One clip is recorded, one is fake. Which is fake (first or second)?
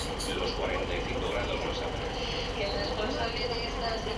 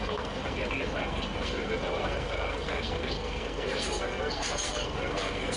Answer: second